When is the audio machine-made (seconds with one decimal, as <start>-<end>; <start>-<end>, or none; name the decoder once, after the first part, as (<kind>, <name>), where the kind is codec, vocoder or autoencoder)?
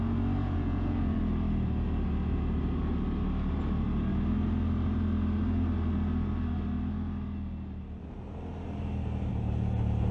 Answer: 0.4-1.2 (vocoder, Vocos)